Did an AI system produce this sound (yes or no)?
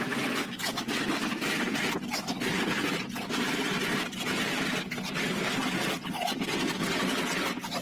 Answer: no